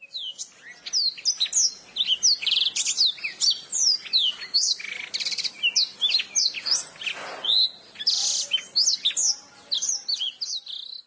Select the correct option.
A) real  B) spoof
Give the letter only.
A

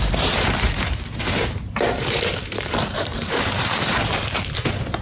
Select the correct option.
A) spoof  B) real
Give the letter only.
A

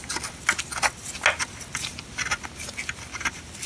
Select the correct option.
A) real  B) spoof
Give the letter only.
A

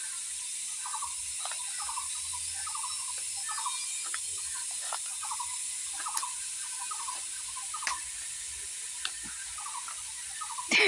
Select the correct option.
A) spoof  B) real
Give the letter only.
B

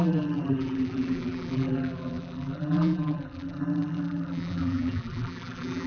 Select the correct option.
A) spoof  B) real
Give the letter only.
A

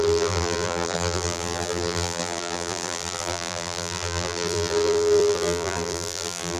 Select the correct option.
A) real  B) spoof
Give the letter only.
B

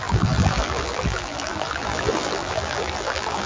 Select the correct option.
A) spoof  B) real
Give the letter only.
A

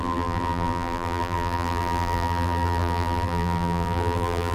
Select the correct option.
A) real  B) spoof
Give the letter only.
B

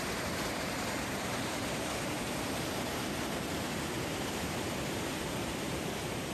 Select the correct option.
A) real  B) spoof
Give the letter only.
B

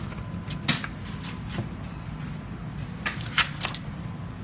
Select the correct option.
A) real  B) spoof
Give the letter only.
A